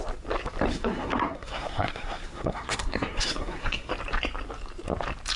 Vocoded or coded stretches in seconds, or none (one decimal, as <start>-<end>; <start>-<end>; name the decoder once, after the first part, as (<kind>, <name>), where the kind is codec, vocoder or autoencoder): 0.7-3.9 (codec, SNAC)